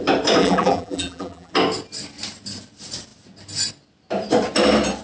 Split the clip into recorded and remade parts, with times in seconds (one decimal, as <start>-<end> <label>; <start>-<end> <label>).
0.0-0.4 recorded; 0.4-1.5 remade; 1.5-5.0 recorded